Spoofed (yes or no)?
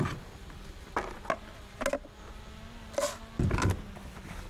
no